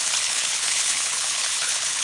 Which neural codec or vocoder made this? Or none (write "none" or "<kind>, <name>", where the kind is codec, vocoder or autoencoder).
codec, HILCodec